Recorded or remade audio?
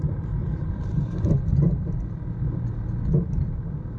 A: recorded